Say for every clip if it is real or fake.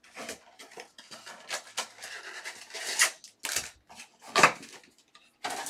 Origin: real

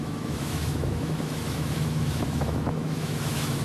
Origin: fake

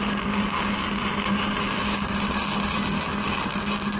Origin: real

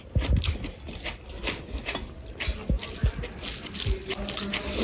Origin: real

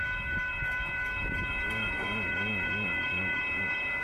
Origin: fake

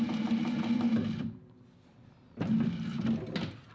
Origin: real